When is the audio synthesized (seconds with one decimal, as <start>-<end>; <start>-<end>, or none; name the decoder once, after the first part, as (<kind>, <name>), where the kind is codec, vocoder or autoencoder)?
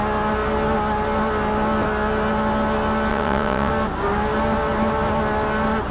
3.1-3.7 (vocoder, WaveNeXt)